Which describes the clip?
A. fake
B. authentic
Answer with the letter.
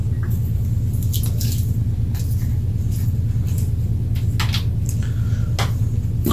B